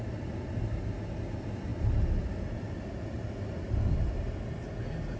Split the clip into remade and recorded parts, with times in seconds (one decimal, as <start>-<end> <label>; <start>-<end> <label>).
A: 0.0-5.2 recorded